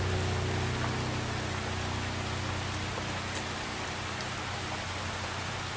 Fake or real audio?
real